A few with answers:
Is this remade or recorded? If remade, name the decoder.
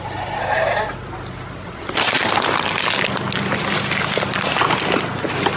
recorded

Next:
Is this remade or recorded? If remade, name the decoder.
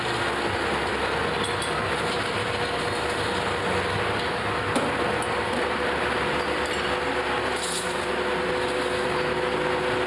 recorded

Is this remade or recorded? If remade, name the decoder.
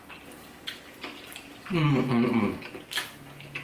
recorded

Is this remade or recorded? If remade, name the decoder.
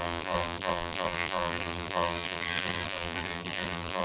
remade, vocoder, BigVGAN v2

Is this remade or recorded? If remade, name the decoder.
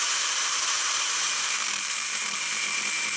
remade, vocoder, BigVGAN v2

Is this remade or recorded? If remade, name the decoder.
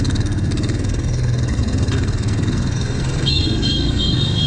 remade, codec, SNAC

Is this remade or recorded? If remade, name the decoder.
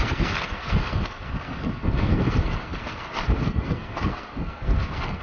remade, codec, SNAC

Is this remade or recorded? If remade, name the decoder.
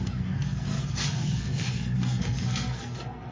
remade, codec, SNAC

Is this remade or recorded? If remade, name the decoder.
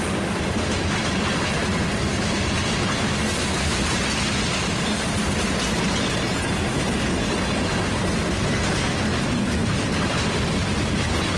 recorded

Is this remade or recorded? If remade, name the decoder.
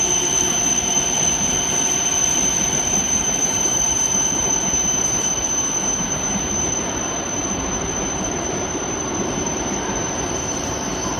remade, vocoder, BigVGAN v2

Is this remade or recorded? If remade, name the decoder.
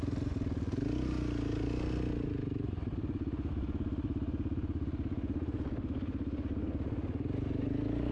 recorded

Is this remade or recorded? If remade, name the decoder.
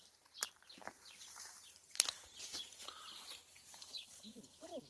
remade, vocoder, BigVGAN v2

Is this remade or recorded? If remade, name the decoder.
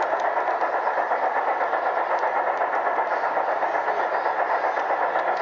recorded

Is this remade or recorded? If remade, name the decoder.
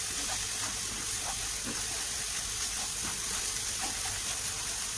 recorded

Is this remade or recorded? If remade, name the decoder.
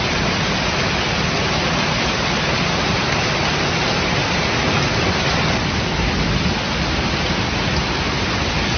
recorded